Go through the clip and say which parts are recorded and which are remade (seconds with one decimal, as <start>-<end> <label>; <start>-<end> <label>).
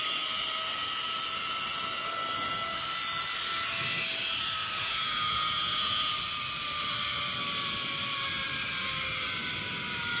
0.0-4.6 recorded; 4.6-6.1 remade; 6.1-10.2 recorded